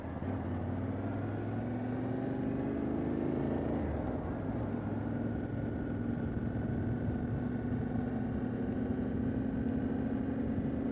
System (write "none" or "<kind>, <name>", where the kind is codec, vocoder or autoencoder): none